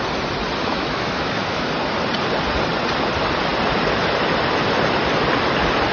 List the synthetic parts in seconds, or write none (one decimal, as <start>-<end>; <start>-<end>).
0.6-1.7